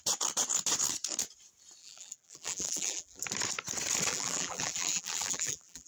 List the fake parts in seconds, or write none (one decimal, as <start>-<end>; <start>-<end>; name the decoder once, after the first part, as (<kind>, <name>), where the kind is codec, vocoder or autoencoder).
1.8-3.2 (vocoder, BigVGAN v2); 4.1-5.9